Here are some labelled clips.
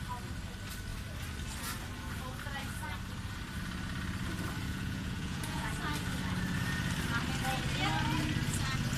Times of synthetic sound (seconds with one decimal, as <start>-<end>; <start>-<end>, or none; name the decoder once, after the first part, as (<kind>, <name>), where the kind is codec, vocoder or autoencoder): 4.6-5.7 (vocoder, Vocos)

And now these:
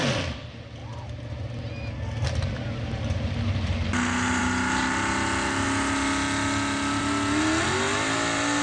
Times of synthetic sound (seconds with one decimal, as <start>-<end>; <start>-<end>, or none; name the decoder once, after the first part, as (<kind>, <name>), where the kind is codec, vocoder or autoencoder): none

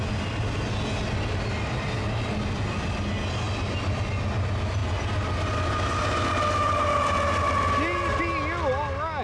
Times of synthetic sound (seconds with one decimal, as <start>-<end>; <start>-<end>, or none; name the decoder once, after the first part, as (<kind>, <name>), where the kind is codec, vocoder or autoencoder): none

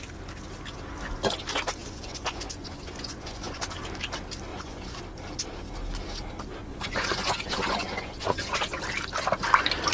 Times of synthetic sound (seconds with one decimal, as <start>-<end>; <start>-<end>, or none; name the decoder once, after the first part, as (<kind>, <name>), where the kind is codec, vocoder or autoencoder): 1.8-3.6 (vocoder, Vocos); 4.5-5.0; 6.6-8.8

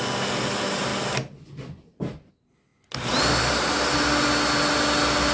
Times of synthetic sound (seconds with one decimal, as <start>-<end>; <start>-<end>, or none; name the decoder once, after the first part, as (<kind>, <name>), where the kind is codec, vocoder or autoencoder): none